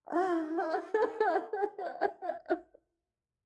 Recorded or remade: remade